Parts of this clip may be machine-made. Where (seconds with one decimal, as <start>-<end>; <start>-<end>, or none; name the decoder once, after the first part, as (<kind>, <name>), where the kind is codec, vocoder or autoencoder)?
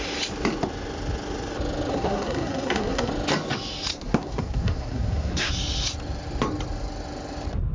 1.9-3.1 (codec, SNAC); 3.9-5.5